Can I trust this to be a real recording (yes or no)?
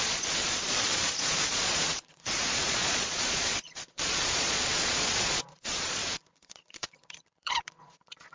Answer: no